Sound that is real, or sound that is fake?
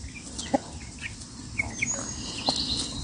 real